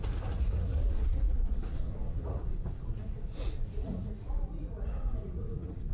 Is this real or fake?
fake